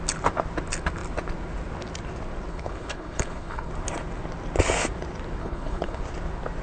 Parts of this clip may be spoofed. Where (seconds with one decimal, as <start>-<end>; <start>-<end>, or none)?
2.5-3.7; 5.4-6.0